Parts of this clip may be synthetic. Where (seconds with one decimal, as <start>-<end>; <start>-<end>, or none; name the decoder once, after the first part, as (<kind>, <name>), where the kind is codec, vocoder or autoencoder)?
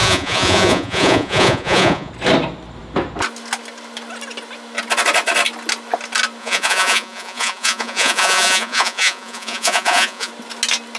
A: 0.0-2.1 (vocoder, Vocos); 6.4-10.3